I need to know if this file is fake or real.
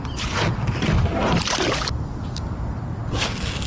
real